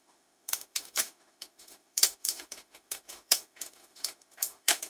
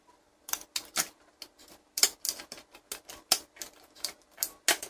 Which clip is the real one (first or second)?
second